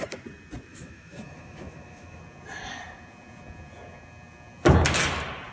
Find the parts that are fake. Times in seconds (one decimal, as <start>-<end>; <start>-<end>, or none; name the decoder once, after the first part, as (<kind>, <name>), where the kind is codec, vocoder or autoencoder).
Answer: 0.7-2.2 (autoencoder, DAC-VAE)